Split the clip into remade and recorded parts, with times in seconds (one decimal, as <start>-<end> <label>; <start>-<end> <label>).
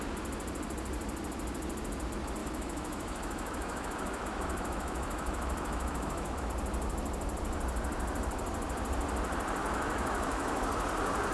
0.0-2.4 recorded; 2.4-6.5 remade; 6.5-9.6 recorded; 9.6-10.6 remade; 10.6-11.3 recorded